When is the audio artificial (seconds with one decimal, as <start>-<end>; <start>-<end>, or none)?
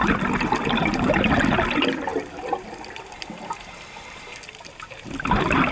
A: 2.1-5.3